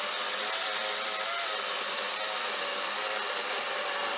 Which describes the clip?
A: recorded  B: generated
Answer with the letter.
A